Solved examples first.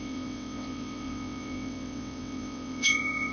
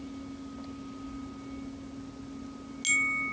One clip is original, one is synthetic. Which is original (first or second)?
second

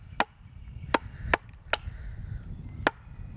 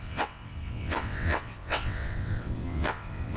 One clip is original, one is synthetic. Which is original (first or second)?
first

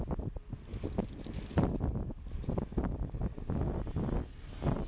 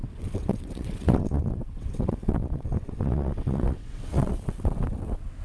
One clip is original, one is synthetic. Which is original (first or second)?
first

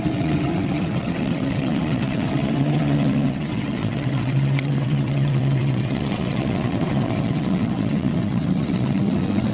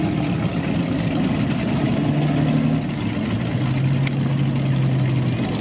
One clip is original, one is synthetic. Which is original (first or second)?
second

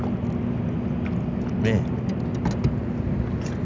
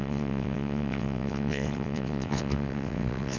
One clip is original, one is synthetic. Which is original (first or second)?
first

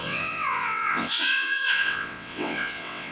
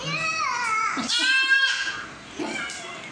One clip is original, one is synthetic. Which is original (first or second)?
second